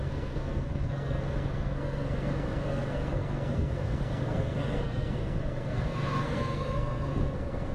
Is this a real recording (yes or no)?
no